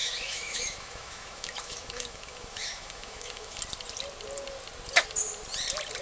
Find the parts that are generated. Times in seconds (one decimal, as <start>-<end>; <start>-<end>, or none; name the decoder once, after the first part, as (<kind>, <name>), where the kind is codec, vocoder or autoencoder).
0.0-3.6 (autoencoder, DAC-VAE)